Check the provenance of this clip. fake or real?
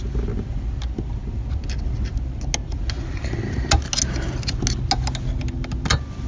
real